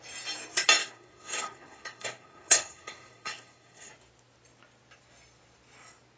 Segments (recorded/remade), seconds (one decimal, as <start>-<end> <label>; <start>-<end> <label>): 0.0-0.8 recorded; 0.8-3.9 remade; 3.9-6.2 recorded